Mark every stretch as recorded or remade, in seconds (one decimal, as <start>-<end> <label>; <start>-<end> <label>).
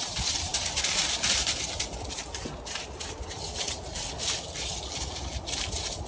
0.0-6.1 recorded